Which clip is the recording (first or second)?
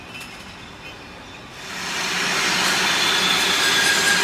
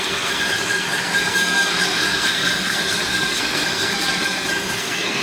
first